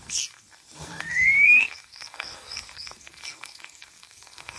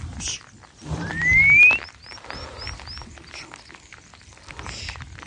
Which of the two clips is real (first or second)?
second